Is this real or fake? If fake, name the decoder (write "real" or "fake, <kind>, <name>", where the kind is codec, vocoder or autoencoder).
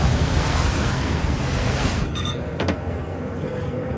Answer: fake, codec, SNAC